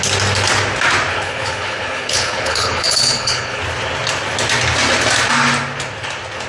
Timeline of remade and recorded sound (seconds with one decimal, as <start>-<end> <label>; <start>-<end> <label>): 0.0-1.1 recorded; 1.1-3.6 remade; 3.6-6.5 recorded